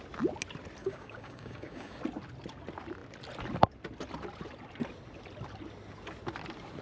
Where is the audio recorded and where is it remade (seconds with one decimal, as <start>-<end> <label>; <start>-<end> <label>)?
0.0-0.8 recorded; 0.8-2.0 remade; 2.0-6.8 recorded